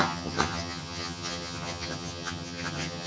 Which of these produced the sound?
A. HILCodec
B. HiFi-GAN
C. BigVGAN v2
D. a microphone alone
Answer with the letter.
B